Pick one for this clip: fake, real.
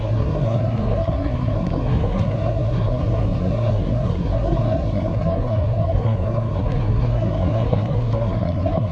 fake